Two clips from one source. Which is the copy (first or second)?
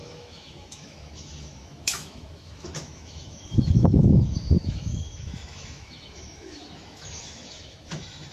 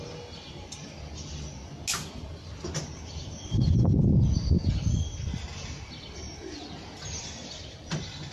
first